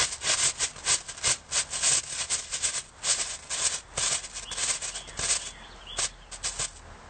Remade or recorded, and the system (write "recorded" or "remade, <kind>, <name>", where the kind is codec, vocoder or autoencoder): recorded